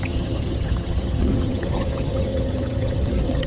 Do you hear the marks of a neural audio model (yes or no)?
yes